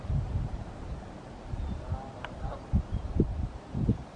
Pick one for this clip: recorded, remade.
recorded